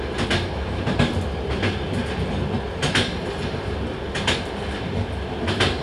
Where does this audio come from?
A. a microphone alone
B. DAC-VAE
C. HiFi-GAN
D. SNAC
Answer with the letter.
A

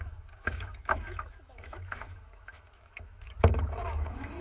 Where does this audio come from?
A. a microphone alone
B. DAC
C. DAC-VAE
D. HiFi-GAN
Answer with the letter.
C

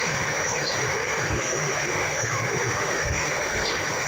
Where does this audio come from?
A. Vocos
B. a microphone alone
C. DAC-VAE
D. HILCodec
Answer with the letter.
C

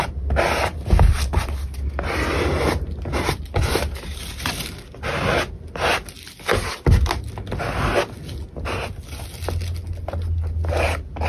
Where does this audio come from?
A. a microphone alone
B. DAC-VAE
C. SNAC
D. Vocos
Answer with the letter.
A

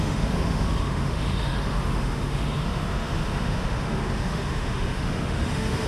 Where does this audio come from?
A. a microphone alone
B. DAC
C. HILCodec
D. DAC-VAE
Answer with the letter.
D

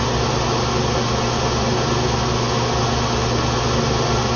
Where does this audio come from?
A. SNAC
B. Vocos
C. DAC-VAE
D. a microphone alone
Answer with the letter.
D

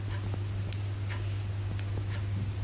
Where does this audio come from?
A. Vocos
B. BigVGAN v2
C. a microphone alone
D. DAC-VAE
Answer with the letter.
C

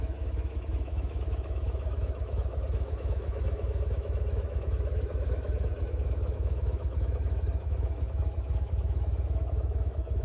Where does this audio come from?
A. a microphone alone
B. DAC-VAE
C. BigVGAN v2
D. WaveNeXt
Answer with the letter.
B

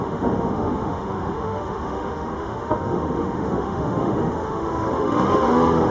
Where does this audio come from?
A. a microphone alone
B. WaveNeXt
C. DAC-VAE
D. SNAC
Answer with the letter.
C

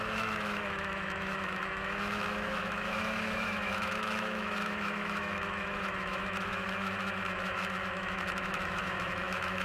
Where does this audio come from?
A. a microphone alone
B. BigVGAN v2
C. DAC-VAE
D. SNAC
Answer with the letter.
C